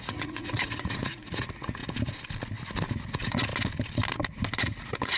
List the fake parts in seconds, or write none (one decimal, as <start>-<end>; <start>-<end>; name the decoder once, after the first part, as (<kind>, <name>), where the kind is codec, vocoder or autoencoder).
0.0-1.8 (vocoder, Vocos); 3.1-3.5; 4.6-5.2

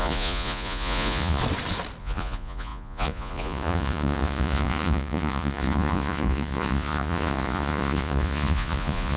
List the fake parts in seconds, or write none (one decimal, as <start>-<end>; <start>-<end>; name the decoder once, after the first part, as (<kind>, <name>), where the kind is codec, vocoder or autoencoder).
0.0-1.4 (vocoder, Vocos); 2.0-9.2

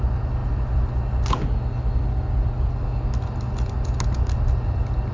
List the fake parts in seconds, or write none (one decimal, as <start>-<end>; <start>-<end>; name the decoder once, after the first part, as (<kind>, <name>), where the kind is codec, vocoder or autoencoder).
none

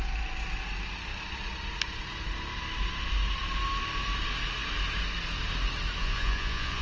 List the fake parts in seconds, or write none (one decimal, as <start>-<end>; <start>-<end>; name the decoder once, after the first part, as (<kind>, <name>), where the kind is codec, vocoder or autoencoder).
6.0-6.8 (vocoder, Vocos)